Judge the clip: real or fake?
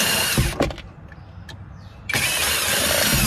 real